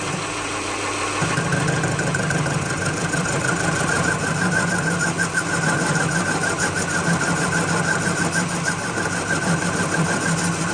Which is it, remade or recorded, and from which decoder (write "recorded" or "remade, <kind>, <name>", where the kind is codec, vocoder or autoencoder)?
remade, vocoder, BigVGAN v2